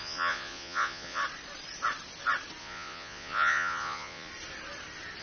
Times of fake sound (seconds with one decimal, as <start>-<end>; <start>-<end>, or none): 0.0-1.2; 2.6-4.3